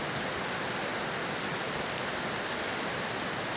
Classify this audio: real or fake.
real